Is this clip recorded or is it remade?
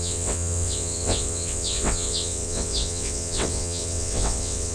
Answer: remade